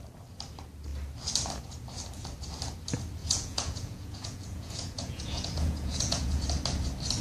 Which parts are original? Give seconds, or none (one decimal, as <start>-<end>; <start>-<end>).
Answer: 0.0-3.2; 6.4-7.2